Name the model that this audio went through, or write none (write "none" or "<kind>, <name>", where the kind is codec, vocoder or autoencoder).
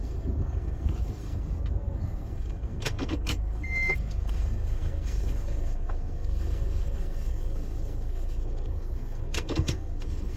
codec, SNAC